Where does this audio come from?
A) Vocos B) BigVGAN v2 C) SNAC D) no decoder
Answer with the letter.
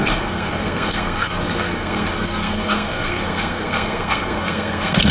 C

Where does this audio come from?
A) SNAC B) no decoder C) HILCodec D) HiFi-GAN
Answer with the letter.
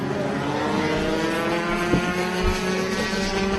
B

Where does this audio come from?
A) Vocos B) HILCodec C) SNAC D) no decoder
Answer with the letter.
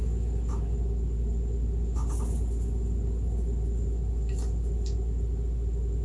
D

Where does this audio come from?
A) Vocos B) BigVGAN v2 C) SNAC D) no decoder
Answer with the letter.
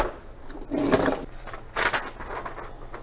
D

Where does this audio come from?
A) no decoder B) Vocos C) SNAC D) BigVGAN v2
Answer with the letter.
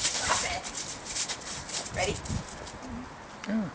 A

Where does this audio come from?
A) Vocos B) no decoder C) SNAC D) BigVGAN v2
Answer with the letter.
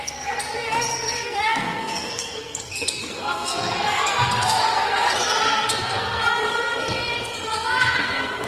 C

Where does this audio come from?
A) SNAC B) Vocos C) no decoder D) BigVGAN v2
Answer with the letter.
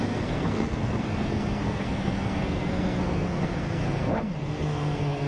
A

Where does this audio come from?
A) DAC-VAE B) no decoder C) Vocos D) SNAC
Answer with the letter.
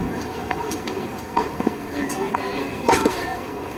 D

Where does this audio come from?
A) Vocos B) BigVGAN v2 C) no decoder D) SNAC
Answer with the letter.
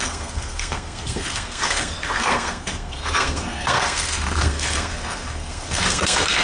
D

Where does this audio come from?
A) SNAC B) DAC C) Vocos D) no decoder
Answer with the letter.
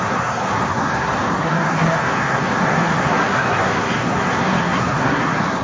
A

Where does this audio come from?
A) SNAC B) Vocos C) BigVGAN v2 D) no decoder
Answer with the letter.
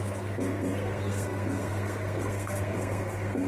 A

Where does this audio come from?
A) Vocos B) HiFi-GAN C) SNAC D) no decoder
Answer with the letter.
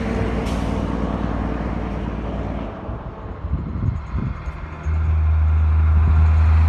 D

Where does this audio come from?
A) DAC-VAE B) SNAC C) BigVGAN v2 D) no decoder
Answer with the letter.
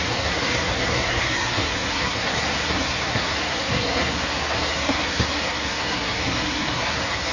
B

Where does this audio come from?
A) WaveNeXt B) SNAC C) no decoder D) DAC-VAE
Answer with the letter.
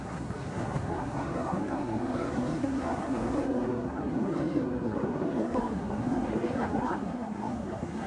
B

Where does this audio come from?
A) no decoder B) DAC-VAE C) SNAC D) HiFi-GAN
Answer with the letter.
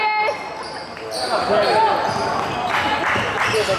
A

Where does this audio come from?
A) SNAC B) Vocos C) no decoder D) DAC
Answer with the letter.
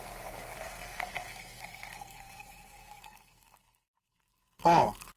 A